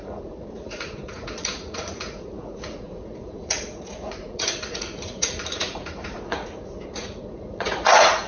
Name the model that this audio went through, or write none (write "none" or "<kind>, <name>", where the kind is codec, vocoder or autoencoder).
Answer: vocoder, Vocos